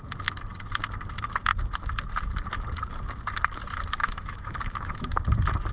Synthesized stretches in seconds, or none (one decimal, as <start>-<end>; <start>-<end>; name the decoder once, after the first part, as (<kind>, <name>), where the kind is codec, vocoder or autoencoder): 4.0-5.2 (autoencoder, DAC-VAE)

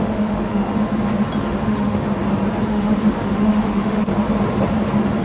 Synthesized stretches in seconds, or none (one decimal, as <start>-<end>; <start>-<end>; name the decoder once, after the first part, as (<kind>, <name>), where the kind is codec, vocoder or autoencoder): 0.0-0.9 (autoencoder, DAC-VAE); 1.4-2.1; 2.7-4.1

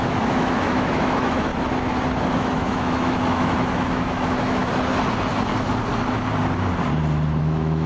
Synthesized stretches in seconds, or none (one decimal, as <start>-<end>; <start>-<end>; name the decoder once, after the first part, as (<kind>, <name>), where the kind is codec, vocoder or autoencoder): 0.0-1.5 (autoencoder, DAC-VAE); 2.3-4.6; 7.4-7.9

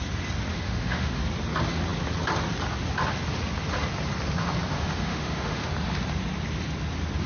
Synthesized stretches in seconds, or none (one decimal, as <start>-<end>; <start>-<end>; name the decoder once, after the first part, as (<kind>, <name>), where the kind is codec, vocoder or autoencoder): 0.5-1.2 (autoencoder, DAC-VAE); 4.7-5.7

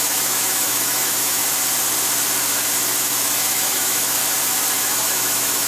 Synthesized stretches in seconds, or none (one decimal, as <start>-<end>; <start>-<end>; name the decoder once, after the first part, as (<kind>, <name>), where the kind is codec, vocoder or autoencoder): 0.0-1.4 (autoencoder, DAC-VAE); 3.0-4.2; 4.8-5.7

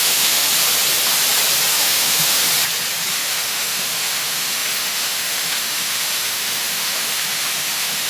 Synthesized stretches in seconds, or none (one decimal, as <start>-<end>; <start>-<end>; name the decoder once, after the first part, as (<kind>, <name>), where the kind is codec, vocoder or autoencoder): 0.0-0.5 (autoencoder, DAC-VAE); 1.7-2.4; 3.1-8.1

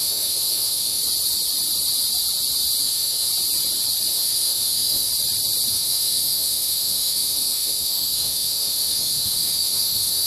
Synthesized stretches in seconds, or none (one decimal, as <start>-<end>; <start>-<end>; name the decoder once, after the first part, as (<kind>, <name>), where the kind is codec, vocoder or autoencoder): 0.0-1.0 (autoencoder, DAC-VAE); 2.8-3.3; 4.1-5.1; 5.7-10.3